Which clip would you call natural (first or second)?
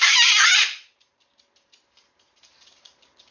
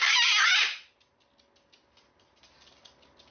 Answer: second